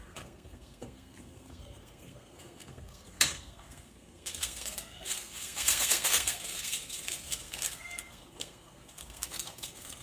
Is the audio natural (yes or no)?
no